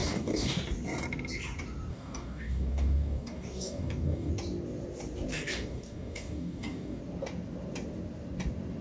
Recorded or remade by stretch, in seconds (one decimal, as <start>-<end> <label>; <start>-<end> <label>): 0.0-0.6 remade; 0.6-1.9 recorded; 1.9-4.3 remade; 4.3-5.3 recorded; 5.3-7.0 remade; 7.0-8.8 recorded